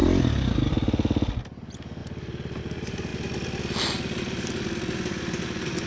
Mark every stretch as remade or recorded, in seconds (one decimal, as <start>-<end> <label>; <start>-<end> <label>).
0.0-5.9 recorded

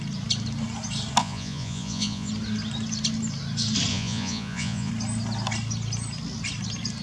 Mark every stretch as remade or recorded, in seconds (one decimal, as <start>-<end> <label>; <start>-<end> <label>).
0.0-1.2 recorded; 1.2-2.3 remade; 2.3-3.9 recorded; 3.9-4.9 remade; 4.9-7.0 recorded

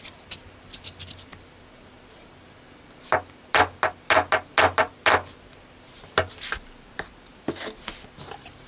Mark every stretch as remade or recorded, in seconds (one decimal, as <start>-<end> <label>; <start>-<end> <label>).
0.0-8.7 recorded

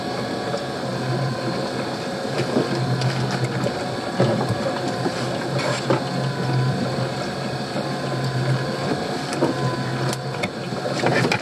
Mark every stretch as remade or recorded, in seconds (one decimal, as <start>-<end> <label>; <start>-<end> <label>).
0.0-11.4 recorded